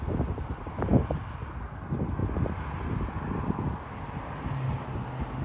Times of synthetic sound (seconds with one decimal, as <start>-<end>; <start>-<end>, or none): none